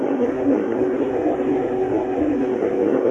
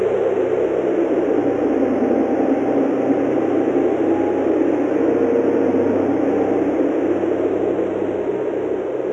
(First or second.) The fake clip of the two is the first